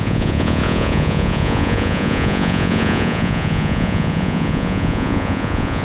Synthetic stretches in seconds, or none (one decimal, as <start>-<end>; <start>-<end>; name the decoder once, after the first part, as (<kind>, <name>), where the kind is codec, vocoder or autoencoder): 0.0-5.8 (vocoder, Vocos)